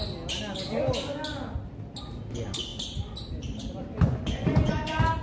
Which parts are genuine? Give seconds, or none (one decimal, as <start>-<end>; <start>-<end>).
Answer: 0.0-3.9; 4.7-5.2